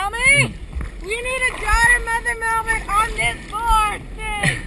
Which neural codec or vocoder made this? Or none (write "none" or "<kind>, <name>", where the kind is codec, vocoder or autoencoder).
none